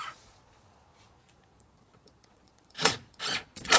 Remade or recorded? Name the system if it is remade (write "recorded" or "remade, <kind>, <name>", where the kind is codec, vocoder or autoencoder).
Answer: remade, vocoder, Vocos